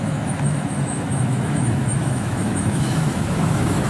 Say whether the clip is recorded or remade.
remade